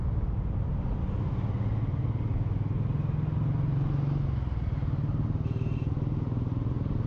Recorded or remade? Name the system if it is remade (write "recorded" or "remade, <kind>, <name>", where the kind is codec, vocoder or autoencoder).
recorded